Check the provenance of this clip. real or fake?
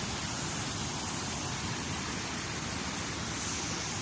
real